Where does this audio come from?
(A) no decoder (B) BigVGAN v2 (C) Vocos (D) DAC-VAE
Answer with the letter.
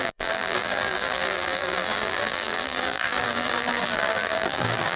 B